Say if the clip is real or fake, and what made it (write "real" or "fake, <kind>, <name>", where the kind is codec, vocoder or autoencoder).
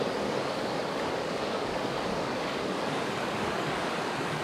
fake, codec, DAC